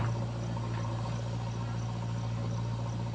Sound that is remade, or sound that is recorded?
recorded